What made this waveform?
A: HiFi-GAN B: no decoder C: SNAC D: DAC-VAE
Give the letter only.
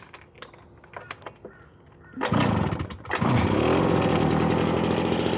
B